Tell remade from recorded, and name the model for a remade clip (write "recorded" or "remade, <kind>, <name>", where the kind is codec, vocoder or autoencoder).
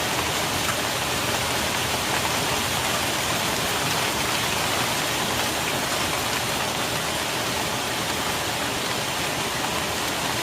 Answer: recorded